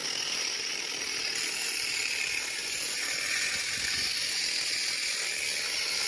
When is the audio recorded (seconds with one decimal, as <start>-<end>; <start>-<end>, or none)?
0.0-2.6; 4.4-6.1